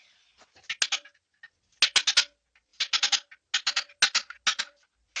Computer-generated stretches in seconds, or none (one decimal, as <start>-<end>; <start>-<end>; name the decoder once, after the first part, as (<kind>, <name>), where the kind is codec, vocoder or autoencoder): none